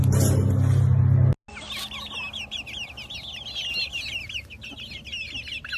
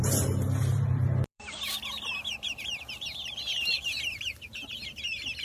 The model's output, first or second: second